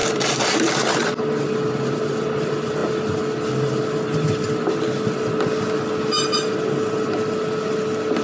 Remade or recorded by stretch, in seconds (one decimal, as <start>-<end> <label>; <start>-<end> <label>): 0.0-1.1 remade; 1.1-8.2 recorded